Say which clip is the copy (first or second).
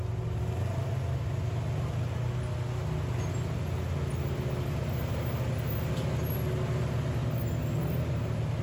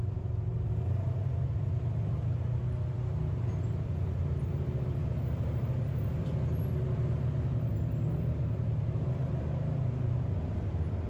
second